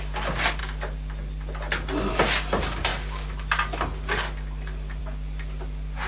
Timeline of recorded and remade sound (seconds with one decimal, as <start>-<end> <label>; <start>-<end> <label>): 0.0-6.1 recorded